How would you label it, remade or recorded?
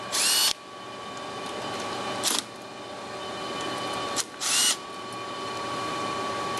recorded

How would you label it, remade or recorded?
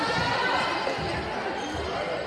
recorded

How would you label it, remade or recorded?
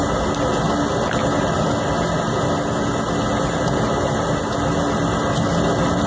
recorded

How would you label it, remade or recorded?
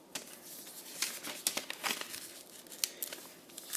recorded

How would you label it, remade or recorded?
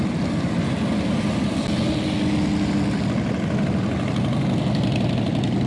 recorded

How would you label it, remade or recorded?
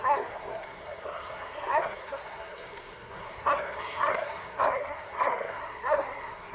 remade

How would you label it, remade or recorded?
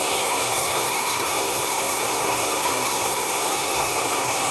remade